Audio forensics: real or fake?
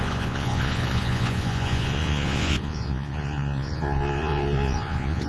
fake